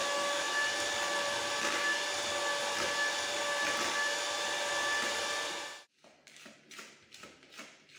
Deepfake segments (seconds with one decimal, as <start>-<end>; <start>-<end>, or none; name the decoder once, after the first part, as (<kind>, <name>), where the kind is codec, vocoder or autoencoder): 0.0-0.6 (autoencoder, DAC-VAE)